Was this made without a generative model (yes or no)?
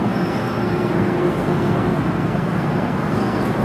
no